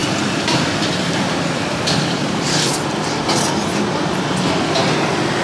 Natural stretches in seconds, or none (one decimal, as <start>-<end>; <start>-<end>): 3.2-5.4